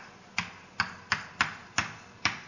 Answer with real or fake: real